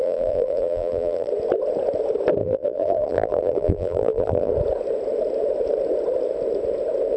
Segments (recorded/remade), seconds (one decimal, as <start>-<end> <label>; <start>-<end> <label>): 0.0-1.3 remade; 1.3-2.4 recorded; 2.4-4.5 remade; 4.5-7.2 recorded